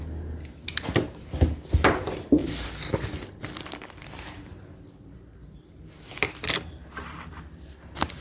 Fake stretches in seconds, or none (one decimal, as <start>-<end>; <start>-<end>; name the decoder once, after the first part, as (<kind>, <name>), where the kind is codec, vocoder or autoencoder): 2.4-7.3 (vocoder, BigVGAN v2)